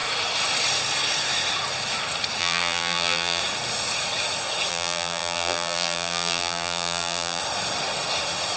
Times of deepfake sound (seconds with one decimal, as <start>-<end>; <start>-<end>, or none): 2.4-3.4; 4.7-7.4